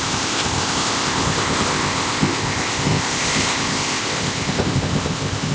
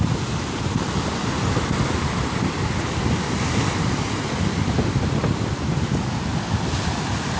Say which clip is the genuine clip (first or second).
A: second